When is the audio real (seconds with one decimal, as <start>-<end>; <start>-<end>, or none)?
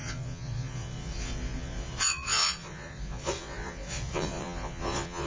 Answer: none